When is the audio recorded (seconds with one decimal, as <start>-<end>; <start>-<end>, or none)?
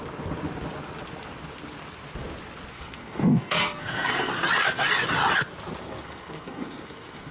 0.0-2.7; 4.3-5.8